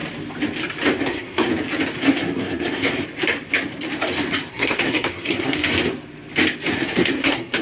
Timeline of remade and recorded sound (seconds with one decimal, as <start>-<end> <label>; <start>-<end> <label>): 0.0-1.0 recorded; 1.0-1.5 remade; 1.5-2.0 recorded; 2.0-3.0 remade; 3.0-4.5 recorded; 4.5-5.7 remade; 5.7-6.7 recorded; 6.7-7.6 remade